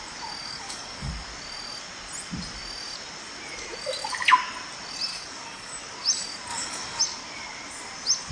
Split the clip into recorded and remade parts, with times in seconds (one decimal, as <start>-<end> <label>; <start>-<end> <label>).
0.0-0.4 recorded; 0.4-1.1 remade; 1.1-5.1 recorded; 5.1-5.7 remade; 5.7-6.5 recorded; 6.5-7.0 remade; 7.0-8.3 recorded